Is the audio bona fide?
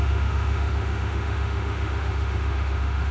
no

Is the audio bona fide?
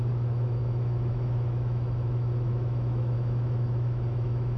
no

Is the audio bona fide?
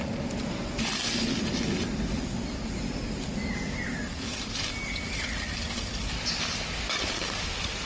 yes